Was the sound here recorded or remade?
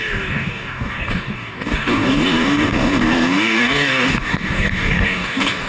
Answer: remade